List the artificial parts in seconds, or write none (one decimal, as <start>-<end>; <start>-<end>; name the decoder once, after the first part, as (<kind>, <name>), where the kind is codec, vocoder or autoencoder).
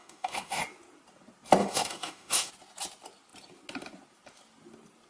0.0-0.6 (autoencoder, DAC-VAE); 1.6-2.5